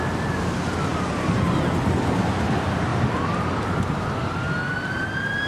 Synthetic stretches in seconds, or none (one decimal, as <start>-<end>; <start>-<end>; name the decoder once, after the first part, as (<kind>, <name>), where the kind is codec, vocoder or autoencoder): 0.9-1.7 (vocoder, BigVGAN v2); 2.9-3.7